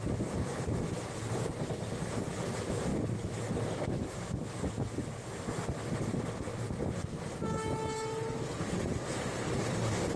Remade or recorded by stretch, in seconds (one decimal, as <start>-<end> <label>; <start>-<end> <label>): 0.0-10.2 recorded